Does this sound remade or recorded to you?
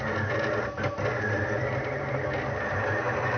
recorded